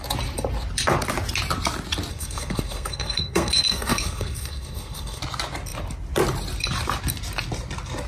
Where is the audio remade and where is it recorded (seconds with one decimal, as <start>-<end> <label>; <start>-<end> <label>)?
0.0-2.1 recorded; 2.1-5.2 remade; 5.2-8.1 recorded